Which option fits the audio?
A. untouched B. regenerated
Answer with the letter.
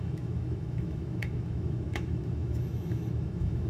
B